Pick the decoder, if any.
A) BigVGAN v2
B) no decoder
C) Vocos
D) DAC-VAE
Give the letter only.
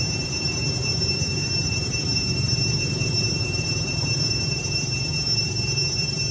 A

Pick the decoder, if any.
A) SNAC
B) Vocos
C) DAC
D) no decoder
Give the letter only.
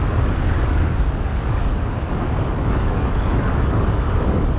C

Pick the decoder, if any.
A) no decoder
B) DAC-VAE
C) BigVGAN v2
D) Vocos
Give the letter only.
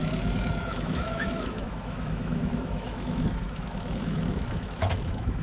B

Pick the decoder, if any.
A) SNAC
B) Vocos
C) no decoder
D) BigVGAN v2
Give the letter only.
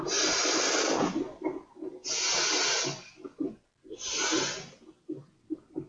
C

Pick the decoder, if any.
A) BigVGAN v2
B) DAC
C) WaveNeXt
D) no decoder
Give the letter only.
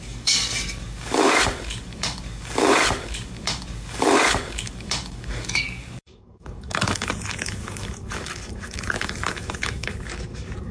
B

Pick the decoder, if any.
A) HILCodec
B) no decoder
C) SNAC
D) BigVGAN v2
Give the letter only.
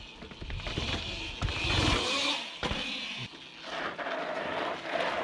B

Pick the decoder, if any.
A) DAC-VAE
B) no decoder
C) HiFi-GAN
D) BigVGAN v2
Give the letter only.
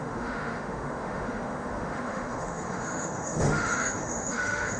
A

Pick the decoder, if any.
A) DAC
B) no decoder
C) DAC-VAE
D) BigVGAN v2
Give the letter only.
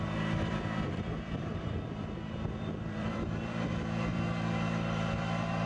D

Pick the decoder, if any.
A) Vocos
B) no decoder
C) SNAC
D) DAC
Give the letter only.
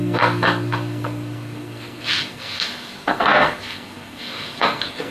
C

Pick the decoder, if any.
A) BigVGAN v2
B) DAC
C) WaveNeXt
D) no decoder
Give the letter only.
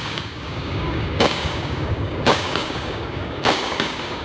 B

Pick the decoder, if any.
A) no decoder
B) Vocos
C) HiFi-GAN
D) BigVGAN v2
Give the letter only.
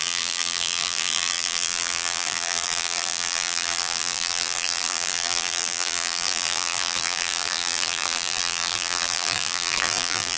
D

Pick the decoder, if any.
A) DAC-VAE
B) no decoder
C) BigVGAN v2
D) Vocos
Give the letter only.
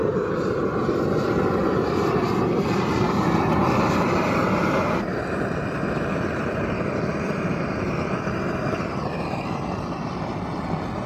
B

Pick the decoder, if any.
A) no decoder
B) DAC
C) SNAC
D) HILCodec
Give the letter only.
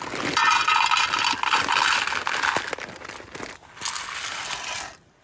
A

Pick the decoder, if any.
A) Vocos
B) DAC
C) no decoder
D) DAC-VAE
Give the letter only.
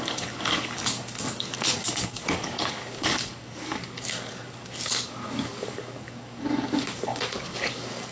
B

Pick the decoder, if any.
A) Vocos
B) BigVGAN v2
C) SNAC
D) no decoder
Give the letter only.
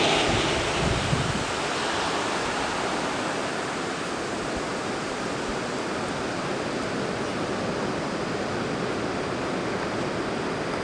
D